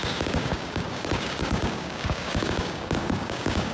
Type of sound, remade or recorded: remade